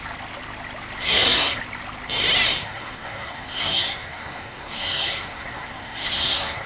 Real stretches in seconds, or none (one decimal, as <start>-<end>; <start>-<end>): 0.0-1.0; 1.6-2.6